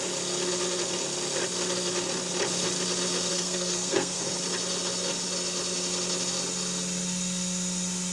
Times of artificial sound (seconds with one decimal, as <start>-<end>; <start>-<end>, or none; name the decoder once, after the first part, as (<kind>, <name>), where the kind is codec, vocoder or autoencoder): 3.3-4.3 (codec, SNAC)